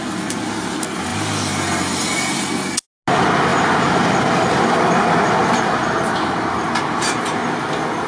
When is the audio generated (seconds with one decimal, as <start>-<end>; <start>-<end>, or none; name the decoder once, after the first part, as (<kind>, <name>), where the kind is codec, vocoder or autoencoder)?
none